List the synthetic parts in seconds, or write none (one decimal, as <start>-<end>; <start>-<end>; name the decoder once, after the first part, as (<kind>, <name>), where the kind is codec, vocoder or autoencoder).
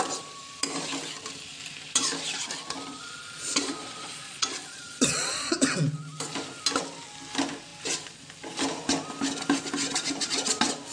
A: 2.9-5.7 (vocoder, Vocos)